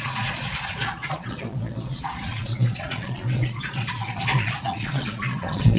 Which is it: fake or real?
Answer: fake